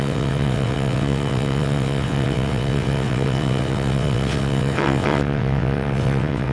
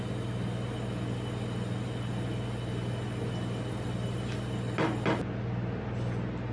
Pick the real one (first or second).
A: second